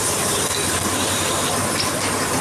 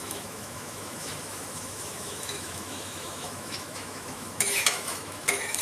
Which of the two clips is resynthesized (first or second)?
second